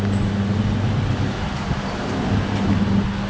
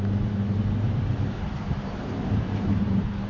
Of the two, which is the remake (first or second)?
second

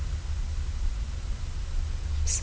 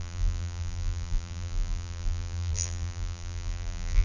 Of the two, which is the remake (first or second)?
second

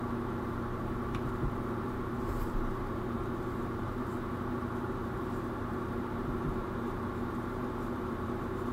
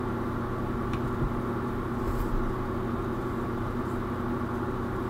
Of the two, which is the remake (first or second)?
first